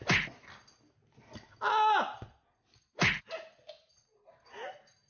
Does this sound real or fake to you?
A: real